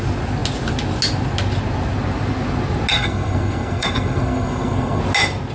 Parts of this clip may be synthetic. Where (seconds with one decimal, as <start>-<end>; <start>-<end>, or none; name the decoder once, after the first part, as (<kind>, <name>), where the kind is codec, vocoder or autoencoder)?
2.9-5.0 (codec, SNAC)